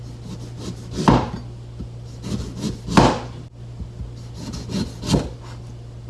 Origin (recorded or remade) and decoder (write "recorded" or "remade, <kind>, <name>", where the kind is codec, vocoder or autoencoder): recorded